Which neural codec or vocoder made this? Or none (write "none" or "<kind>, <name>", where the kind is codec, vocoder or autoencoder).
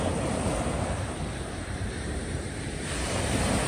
vocoder, BigVGAN v2